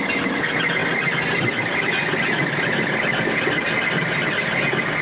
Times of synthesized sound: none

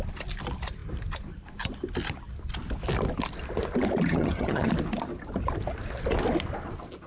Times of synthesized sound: 4.1-4.7 (vocoder, HiFi-GAN)

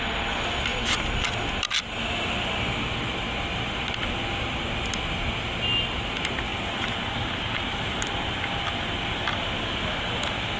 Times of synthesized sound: none